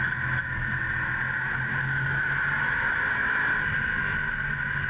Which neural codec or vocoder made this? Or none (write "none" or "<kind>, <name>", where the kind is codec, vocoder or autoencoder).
none